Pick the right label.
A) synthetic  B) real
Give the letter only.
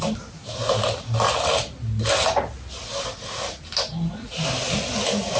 B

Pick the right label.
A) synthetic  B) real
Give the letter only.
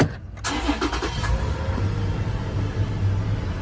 B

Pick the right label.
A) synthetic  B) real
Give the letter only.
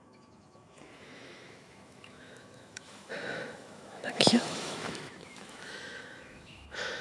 A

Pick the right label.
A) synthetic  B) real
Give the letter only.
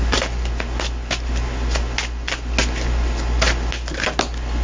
B